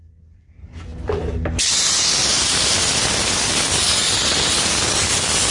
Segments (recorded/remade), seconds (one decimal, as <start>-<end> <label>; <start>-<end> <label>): 0.0-2.2 recorded; 2.2-2.9 remade; 2.9-5.5 recorded